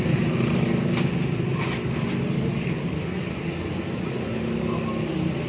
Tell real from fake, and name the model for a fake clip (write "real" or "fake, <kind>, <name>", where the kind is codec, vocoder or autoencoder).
real